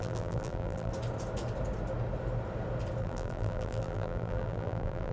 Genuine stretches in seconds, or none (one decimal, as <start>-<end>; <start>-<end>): 0.9-3.0